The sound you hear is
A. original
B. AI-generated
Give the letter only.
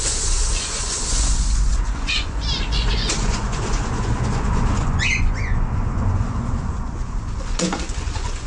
B